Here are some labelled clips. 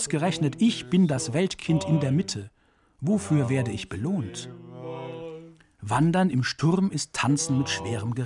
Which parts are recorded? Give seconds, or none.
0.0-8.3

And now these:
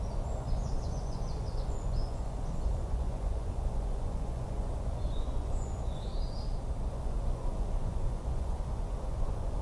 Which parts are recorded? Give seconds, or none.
6.1-6.9

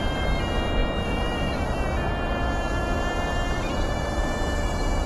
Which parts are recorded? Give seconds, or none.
0.0-5.1

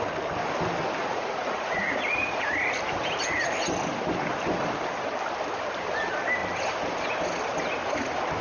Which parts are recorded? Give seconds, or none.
0.0-1.0; 2.5-8.4

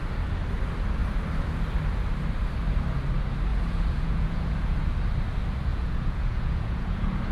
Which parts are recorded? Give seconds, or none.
0.0-3.5; 4.9-5.7